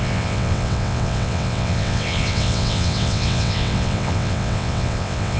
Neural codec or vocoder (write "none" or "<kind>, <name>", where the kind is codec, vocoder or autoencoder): vocoder, WaveNeXt